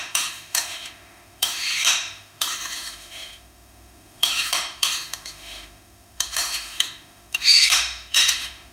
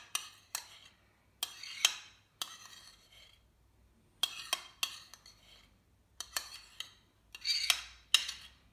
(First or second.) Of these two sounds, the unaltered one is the second